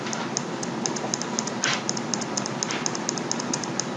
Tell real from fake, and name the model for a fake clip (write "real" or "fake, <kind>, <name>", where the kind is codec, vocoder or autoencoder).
real